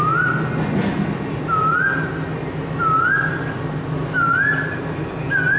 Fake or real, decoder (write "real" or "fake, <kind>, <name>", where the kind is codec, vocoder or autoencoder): real